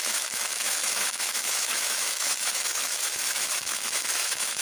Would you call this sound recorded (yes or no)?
no